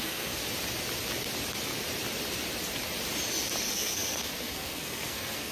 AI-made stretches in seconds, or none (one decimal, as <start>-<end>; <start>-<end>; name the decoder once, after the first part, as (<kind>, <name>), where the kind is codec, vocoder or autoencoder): 0.0-0.4 (codec, SNAC); 3.7-5.5